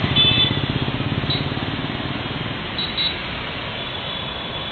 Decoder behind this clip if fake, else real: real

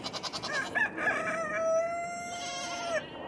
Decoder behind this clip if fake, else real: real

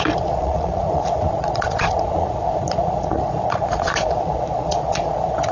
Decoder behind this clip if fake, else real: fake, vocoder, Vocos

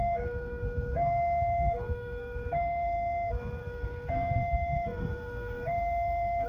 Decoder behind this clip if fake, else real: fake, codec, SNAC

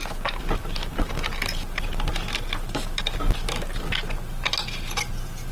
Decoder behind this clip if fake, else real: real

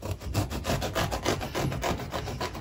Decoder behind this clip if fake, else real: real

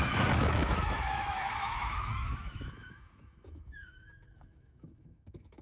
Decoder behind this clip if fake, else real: fake, autoencoder, DAC-VAE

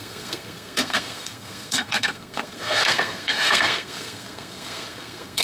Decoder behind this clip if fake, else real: fake, codec, SNAC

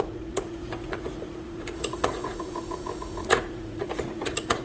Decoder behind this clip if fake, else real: fake, vocoder, Vocos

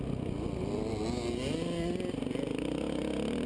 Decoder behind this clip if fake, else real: real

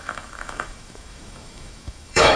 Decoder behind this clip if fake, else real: fake, autoencoder, DAC-VAE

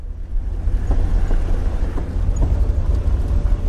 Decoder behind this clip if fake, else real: real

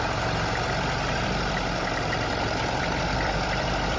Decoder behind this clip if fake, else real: fake, vocoder, BigVGAN v2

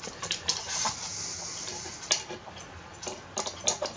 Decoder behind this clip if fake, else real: real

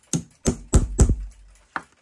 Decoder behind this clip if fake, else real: real